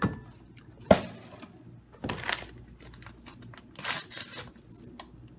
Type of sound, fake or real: real